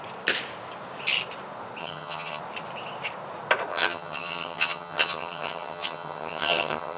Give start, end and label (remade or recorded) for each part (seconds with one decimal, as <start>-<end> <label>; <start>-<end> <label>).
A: 0.0-1.8 recorded; 1.8-2.4 remade; 2.4-3.7 recorded; 3.7-7.0 remade